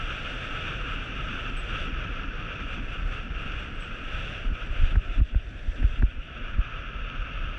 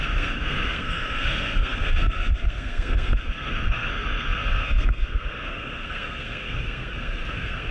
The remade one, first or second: second